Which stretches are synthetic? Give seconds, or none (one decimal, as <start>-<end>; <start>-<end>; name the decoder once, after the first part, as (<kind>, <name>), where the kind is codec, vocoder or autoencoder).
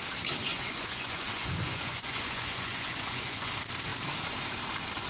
0.5-3.5 (vocoder, Vocos)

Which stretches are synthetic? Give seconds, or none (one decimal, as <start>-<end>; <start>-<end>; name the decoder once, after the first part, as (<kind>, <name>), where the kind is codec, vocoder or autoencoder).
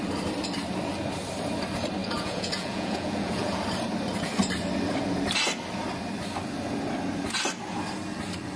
2.0-3.6 (vocoder, Vocos)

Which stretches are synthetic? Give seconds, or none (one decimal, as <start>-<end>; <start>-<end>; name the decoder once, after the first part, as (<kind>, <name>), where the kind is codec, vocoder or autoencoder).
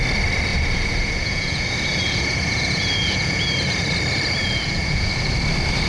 0.5-3.5 (vocoder, Vocos); 4.4-5.1